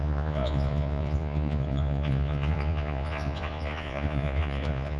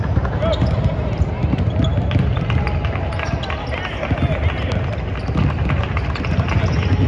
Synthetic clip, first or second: first